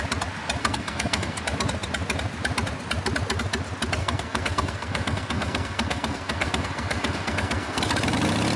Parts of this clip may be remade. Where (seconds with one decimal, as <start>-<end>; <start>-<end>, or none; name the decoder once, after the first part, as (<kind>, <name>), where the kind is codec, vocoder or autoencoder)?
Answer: 0.6-1.4 (codec, SNAC); 4.0-7.8